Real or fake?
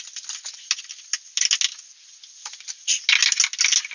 real